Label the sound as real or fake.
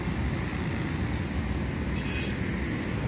real